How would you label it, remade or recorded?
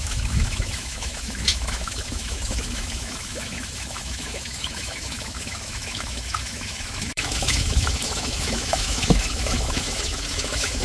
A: remade